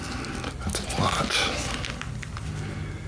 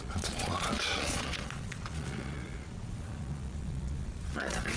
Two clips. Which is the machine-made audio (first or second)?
second